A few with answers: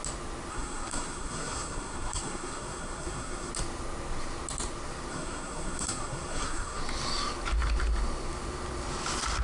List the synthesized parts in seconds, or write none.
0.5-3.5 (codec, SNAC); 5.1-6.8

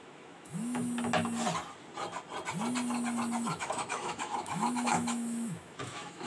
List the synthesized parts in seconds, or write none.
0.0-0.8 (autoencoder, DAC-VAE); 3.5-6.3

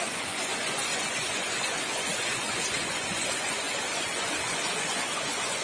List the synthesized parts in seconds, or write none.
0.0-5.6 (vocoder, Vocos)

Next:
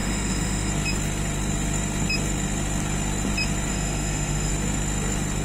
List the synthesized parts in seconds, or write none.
0.0-0.7 (autoencoder, DAC-VAE); 3.7-4.5

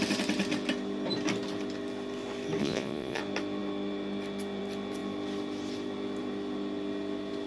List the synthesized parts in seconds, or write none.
2.6-3.2 (vocoder, Vocos)

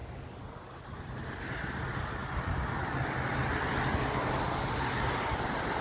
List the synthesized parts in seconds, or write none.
none

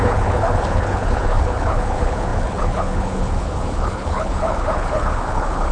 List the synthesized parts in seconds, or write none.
0.0-5.7 (codec, HILCodec)